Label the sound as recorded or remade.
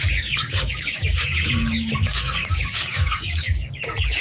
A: remade